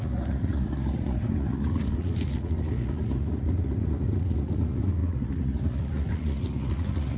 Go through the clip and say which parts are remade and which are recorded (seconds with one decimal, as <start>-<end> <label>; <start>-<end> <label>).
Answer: 0.0-7.2 remade